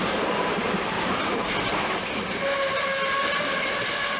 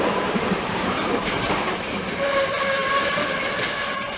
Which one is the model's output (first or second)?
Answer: second